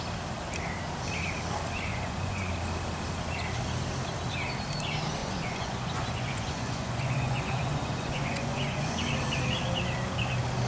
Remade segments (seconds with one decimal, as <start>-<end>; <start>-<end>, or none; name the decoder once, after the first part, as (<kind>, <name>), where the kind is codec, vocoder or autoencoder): 1.9-2.5 (vocoder, Vocos); 5.2-9.0